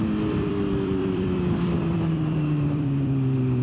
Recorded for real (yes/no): no